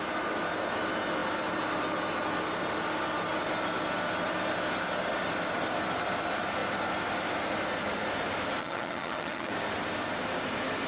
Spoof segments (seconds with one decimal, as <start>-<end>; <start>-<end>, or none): 8.6-9.5